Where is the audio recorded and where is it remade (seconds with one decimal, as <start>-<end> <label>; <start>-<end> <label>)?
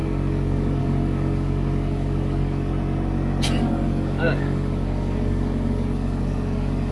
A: 0.0-2.7 remade; 2.7-3.6 recorded; 3.6-6.9 remade